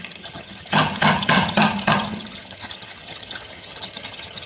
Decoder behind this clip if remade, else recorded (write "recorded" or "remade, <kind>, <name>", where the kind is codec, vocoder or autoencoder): remade, vocoder, HiFi-GAN